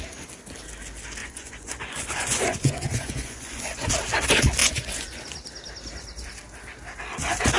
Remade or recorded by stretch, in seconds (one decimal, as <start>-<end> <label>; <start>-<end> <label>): 0.0-1.2 recorded; 1.2-3.9 remade; 3.9-4.6 recorded; 4.6-5.2 remade; 5.2-7.6 recorded